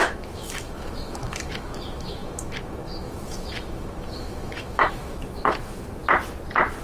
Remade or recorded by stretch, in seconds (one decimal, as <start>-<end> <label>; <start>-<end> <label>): 0.0-6.0 remade; 6.0-6.8 recorded